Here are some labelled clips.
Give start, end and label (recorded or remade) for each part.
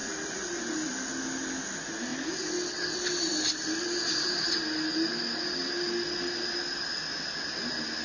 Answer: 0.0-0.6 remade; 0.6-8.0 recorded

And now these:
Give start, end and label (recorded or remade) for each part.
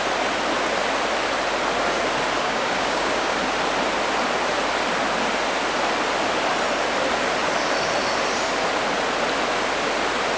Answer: 0.0-2.4 recorded; 2.4-3.4 remade; 3.4-10.4 recorded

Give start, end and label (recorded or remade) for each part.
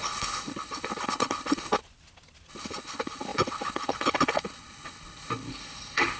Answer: 0.0-1.8 remade; 1.8-2.5 recorded; 2.5-6.2 remade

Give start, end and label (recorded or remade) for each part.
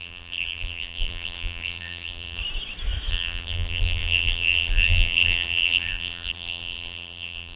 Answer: 0.0-2.4 remade; 2.4-3.1 recorded; 3.1-7.6 remade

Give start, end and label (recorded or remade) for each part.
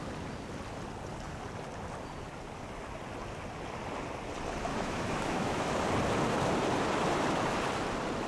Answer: 0.0-4.7 recorded; 4.7-5.6 remade; 5.6-8.3 recorded